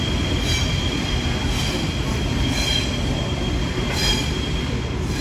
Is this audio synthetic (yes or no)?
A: no